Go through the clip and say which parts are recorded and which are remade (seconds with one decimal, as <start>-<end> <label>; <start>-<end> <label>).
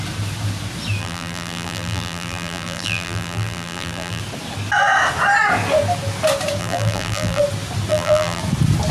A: 0.0-1.0 recorded; 1.0-4.2 remade; 4.2-6.6 recorded; 6.6-7.4 remade; 7.4-7.9 recorded; 7.9-8.4 remade; 8.4-8.9 recorded